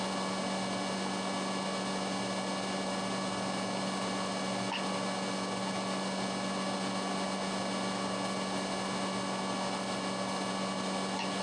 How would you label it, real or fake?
real